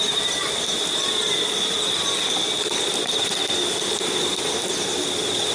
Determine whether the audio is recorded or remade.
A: recorded